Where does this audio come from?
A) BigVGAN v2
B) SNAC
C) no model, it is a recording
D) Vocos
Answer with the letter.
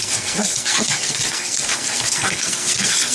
B